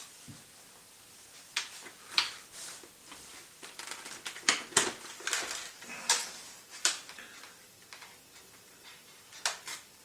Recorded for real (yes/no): yes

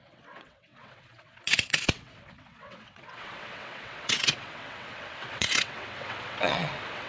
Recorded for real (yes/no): no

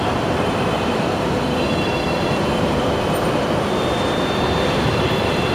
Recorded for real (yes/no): no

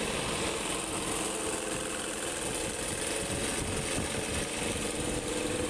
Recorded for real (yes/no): yes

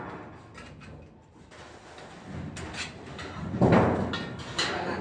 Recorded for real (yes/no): yes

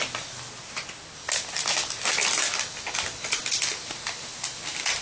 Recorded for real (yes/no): yes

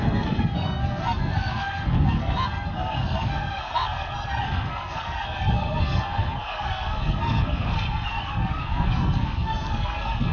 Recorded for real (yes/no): no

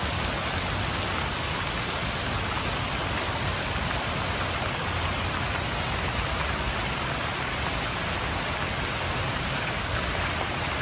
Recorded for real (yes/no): yes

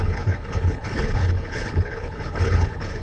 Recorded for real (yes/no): no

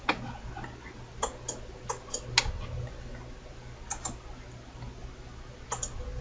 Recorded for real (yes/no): yes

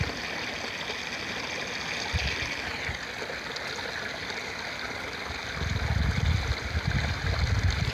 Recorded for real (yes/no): yes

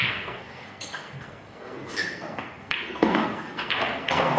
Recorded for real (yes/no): no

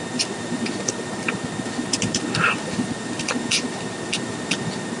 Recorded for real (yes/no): yes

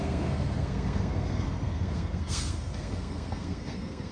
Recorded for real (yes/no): no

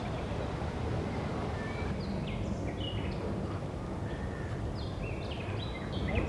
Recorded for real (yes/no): yes